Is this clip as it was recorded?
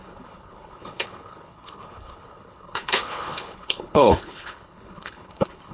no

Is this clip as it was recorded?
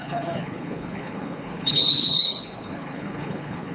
no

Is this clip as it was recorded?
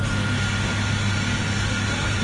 yes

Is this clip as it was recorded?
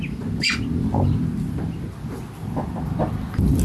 yes